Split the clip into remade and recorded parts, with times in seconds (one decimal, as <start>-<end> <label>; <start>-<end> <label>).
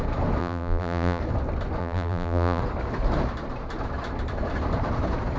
0.0-0.4 recorded; 0.4-1.2 remade; 1.2-1.8 recorded; 1.8-2.6 remade; 2.6-5.4 recorded